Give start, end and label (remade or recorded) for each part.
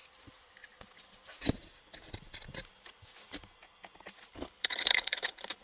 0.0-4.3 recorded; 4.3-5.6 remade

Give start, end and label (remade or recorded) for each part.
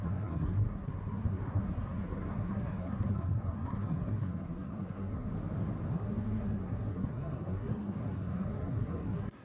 0.0-5.3 remade; 5.3-5.9 recorded; 5.9-9.4 remade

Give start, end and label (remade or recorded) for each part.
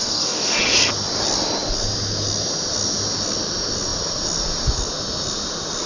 0.0-0.6 remade; 0.6-5.9 recorded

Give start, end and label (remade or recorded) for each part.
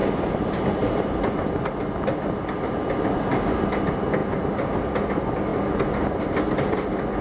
0.0-0.6 remade; 0.6-7.2 recorded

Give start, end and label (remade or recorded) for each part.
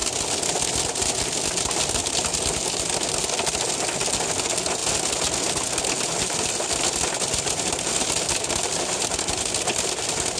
0.0-10.4 recorded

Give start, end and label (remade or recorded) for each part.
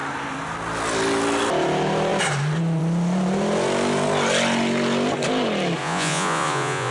0.0-5.8 recorded; 5.8-6.9 remade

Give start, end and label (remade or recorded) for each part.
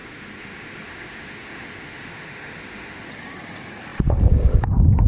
0.0-3.1 remade; 3.1-5.1 recorded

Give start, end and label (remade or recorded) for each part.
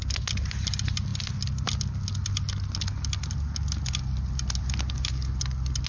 0.0-5.9 recorded